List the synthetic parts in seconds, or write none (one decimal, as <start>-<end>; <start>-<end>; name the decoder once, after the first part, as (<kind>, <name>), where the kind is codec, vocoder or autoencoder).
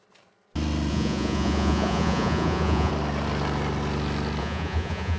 0.9-2.9 (vocoder, Vocos); 4.4-5.2